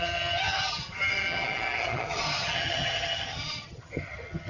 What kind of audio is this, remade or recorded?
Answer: remade